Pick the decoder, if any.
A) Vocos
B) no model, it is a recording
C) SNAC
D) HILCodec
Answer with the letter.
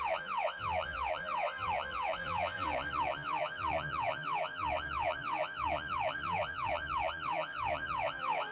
A